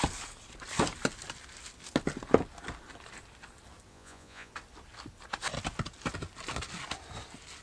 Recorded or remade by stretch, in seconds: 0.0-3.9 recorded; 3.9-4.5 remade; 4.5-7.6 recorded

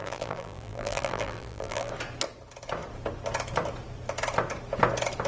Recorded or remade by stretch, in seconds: 0.0-1.9 remade; 1.9-5.3 recorded

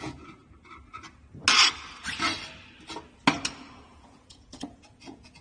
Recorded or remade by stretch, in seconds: 0.0-0.4 remade; 0.4-3.6 recorded; 3.6-5.4 remade

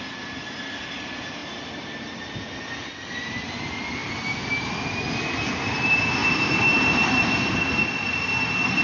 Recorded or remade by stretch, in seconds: 0.0-6.2 recorded; 6.2-7.2 remade; 7.2-8.8 recorded

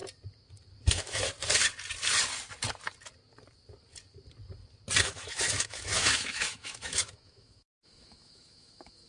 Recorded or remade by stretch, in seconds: 0.0-0.9 recorded; 0.9-1.3 remade; 1.3-5.0 recorded; 5.0-9.1 remade

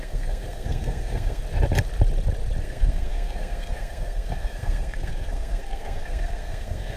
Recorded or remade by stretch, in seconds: 0.0-1.4 remade; 1.4-2.6 recorded; 2.6-7.0 remade